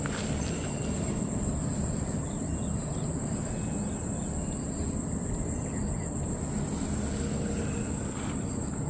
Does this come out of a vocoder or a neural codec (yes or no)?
no